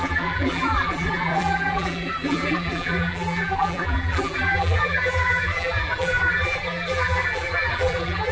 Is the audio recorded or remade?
remade